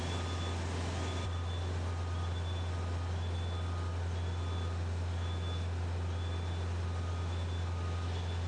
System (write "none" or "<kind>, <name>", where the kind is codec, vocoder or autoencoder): none